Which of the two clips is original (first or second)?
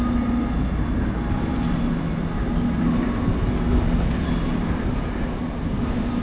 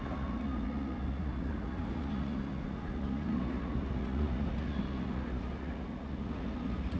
first